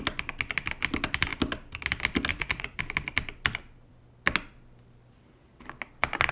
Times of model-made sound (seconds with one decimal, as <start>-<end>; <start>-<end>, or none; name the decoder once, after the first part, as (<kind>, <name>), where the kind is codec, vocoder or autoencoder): 2.3-2.8 (vocoder, Vocos)